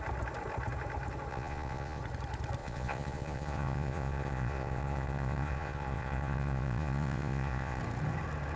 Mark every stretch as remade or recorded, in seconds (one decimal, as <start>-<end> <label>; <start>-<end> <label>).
0.0-1.3 recorded; 1.3-2.0 remade; 2.0-2.6 recorded; 2.6-7.8 remade; 7.8-8.6 recorded